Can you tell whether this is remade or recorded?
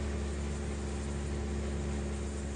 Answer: recorded